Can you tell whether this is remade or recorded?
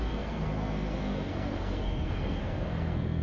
remade